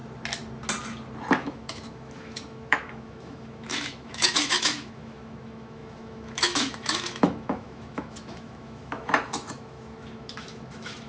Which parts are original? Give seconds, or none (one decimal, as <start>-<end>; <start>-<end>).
0.0-1.3